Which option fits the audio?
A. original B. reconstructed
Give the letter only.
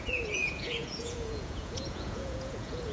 B